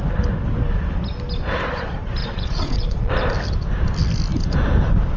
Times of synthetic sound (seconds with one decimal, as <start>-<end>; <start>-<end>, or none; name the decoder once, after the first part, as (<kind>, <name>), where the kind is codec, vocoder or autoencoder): 2.2-3.1 (vocoder, Vocos)